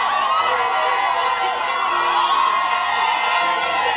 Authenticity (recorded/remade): recorded